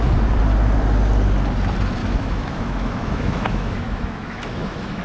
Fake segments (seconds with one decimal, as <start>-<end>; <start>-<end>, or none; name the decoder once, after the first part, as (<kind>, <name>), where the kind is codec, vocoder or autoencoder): 2.0-5.0 (autoencoder, DAC-VAE)